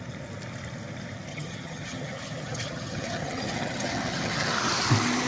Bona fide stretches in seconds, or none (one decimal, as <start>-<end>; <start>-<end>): 0.0-1.3; 4.5-5.3